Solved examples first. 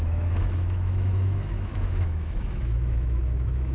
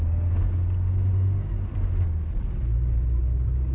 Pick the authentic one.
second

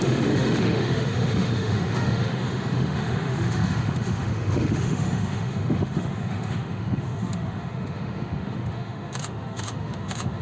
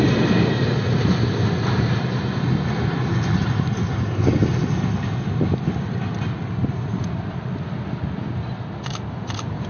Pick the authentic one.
second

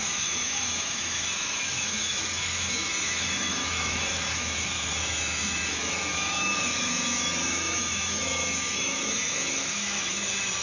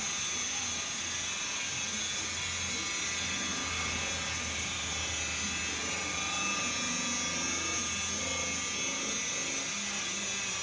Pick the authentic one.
second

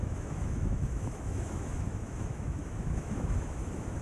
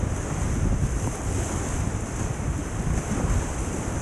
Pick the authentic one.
second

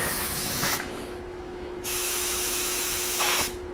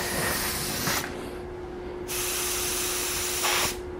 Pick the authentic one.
second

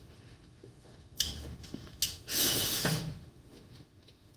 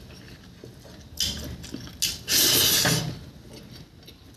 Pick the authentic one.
second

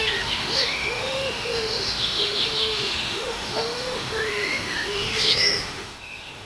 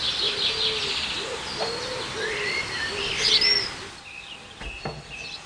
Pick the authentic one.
second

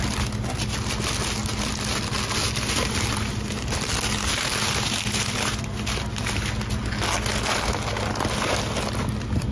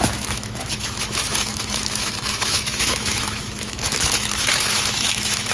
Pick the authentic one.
first